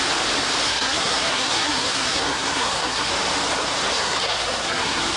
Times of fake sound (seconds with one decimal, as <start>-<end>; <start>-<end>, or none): 0.6-3.1; 3.9-5.2